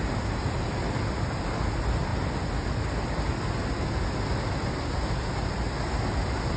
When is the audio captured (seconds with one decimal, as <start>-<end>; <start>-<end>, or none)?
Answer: 0.0-6.6